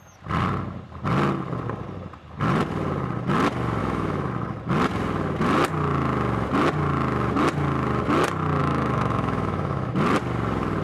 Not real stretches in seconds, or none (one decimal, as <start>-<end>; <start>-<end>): 3.8-4.3; 8.6-9.9